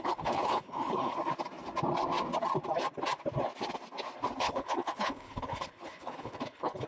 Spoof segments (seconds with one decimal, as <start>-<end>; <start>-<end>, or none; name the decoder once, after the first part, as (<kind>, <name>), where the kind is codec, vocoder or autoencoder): 0.0-1.2 (codec, HILCodec); 4.4-6.9